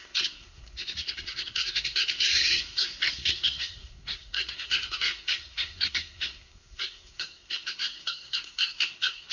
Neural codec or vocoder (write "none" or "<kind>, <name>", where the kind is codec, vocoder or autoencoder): codec, SNAC